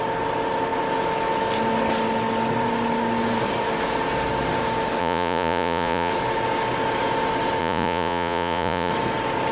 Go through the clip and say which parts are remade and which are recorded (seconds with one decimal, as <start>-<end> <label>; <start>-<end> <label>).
0.0-5.0 recorded; 5.0-6.1 remade; 6.1-7.6 recorded; 7.6-8.9 remade; 8.9-9.5 recorded